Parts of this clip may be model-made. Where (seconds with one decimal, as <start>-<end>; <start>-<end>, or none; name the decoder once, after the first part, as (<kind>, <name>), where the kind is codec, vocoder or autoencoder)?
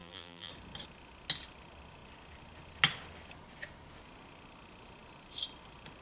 0.0-0.5 (vocoder, BigVGAN v2)